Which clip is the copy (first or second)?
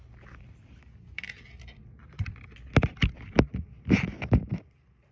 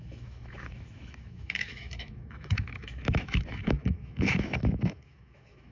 second